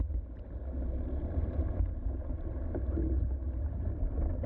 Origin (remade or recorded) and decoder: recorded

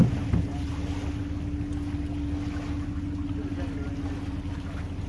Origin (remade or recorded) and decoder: recorded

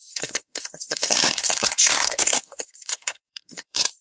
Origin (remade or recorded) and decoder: remade, codec, SNAC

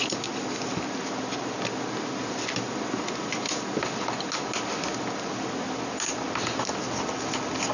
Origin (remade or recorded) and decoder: recorded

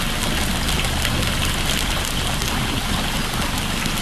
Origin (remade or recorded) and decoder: recorded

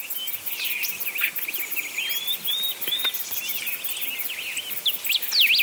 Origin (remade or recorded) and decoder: recorded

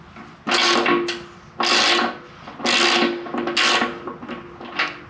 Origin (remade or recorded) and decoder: recorded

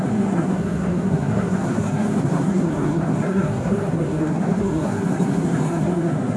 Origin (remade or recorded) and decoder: remade, codec, SNAC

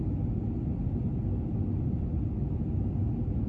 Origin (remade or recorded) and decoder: recorded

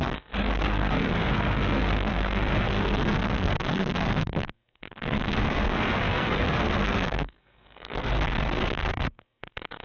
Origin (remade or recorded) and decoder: remade, codec, SNAC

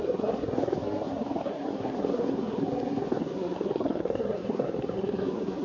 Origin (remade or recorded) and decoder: remade, codec, SNAC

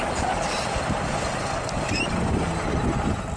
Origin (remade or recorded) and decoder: recorded